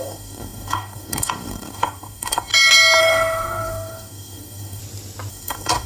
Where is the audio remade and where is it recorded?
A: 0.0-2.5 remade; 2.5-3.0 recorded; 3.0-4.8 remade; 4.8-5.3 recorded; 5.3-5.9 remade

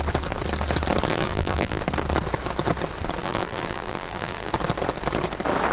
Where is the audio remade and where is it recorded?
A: 0.0-1.1 recorded; 1.1-1.8 remade; 1.8-3.2 recorded; 3.2-4.5 remade; 4.5-5.7 recorded